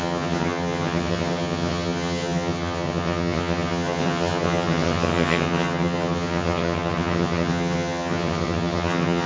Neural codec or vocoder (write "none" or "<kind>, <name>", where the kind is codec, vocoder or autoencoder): vocoder, HiFi-GAN